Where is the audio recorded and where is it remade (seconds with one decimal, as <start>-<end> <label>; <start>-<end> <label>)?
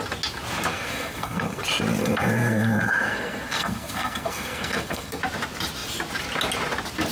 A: 0.0-0.7 recorded; 0.7-1.6 remade; 1.6-2.0 recorded; 2.0-5.2 remade; 5.2-7.1 recorded